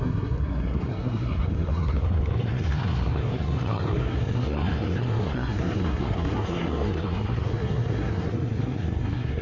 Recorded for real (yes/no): no